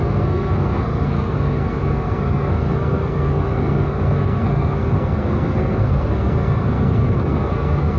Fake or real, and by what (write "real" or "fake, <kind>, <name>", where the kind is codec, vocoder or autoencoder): fake, codec, SNAC